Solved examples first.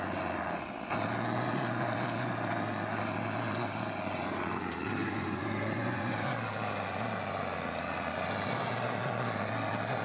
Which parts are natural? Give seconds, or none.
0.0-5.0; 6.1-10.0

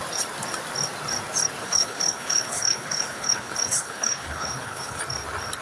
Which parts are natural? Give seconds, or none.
0.0-1.6; 5.0-5.6